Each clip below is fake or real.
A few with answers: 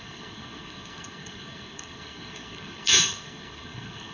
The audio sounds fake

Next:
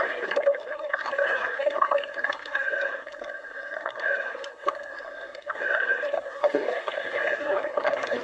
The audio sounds fake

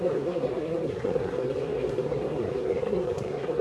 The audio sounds fake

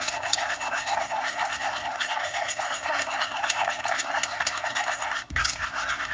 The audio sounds fake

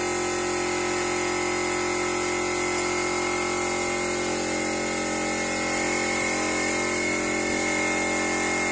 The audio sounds real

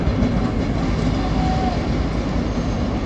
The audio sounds real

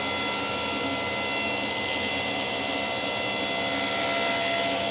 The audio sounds real